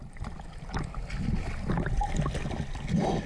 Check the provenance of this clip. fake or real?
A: real